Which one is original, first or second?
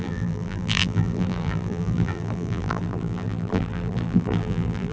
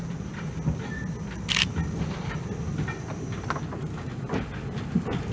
second